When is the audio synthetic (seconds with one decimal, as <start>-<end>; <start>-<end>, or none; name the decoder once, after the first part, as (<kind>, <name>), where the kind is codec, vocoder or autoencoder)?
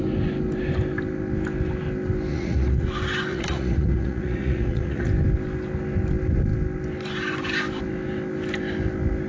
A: 2.3-2.9 (vocoder, Vocos); 3.3-5.1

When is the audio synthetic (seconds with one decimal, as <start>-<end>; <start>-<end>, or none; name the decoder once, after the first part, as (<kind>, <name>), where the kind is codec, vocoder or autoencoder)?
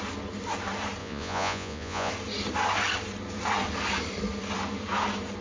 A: 1.0-2.1 (vocoder, Vocos)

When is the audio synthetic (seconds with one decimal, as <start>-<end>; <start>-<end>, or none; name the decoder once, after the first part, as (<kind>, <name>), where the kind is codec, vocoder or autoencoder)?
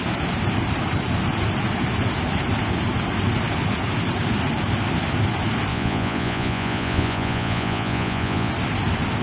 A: 5.7-8.5 (vocoder, Vocos)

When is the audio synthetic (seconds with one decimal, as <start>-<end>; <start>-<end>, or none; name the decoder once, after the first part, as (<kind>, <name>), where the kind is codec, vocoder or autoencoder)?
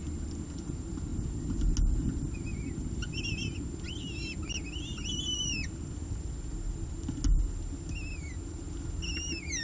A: none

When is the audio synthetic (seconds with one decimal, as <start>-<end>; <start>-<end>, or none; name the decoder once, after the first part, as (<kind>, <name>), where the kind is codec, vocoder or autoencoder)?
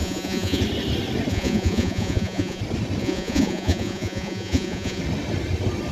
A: 0.0-0.6 (vocoder, Vocos); 1.3-2.6; 3.0-5.0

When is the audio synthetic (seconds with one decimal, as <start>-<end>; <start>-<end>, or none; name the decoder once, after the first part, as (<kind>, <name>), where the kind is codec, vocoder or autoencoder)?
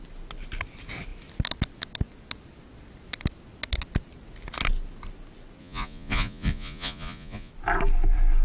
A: 5.6-7.5 (vocoder, Vocos)